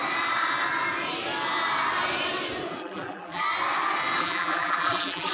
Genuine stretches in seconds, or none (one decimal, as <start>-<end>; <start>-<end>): 0.0-2.8; 3.4-4.2